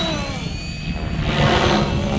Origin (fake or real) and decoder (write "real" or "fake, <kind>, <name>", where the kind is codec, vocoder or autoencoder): real